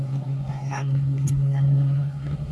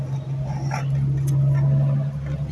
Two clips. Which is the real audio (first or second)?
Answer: second